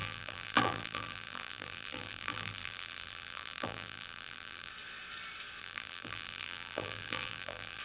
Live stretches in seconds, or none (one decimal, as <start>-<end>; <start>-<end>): 4.7-5.6